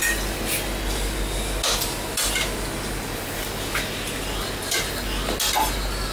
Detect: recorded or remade recorded